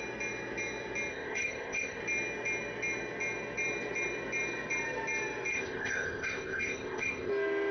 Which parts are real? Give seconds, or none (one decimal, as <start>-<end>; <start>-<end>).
0.0-1.1; 2.0-5.5; 7.3-7.7